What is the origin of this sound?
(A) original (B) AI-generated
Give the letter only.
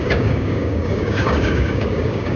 B